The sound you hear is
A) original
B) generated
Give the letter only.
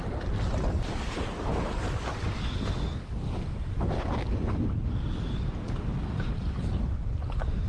A